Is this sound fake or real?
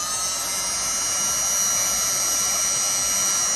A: real